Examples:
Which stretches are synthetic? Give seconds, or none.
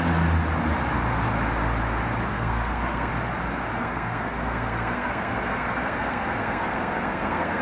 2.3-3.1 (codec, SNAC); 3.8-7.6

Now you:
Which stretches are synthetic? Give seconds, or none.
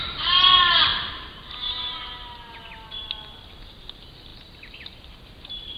none